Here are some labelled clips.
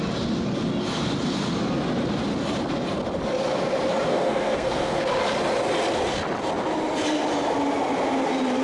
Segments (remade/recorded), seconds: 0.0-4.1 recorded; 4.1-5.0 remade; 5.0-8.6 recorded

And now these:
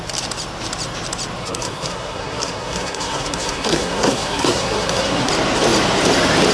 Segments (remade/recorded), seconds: 0.0-1.4 recorded; 1.4-5.3 remade; 5.3-6.5 recorded

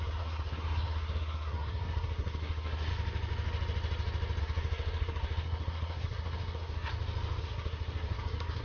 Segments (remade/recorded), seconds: 0.0-2.9 remade; 2.9-4.4 recorded; 4.4-6.9 remade; 6.9-7.4 recorded; 7.4-8.6 remade

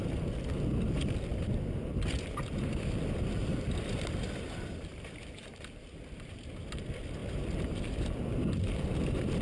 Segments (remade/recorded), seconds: 0.0-9.4 recorded

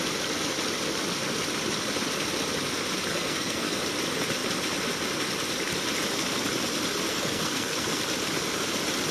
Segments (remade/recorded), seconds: 0.0-3.1 recorded; 3.1-3.8 remade; 3.8-7.1 recorded; 7.1-8.0 remade; 8.0-9.1 recorded

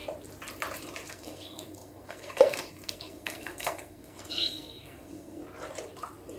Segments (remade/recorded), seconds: 0.0-1.1 recorded; 1.1-5.4 remade; 5.4-6.4 recorded

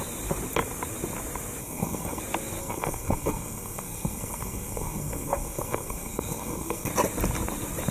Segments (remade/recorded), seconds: 0.0-1.6 recorded; 1.6-2.2 remade; 2.2-2.6 recorded; 2.6-6.9 remade; 6.9-7.9 recorded

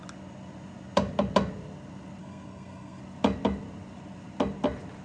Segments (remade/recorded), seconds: 0.0-2.2 recorded; 2.2-3.0 remade; 3.0-5.0 recorded